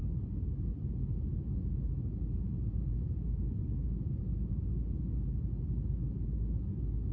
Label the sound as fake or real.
real